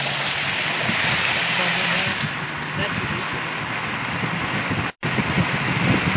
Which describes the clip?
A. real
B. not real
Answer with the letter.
A